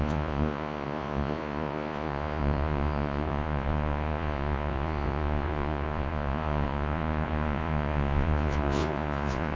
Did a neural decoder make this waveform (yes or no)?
yes